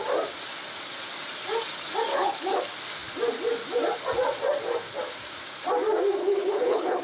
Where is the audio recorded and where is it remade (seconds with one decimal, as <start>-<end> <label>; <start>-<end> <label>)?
0.0-2.1 recorded; 2.1-2.6 remade; 2.6-6.2 recorded; 6.2-7.0 remade